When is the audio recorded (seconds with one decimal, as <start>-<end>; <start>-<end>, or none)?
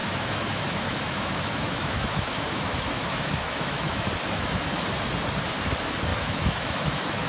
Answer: 4.1-6.1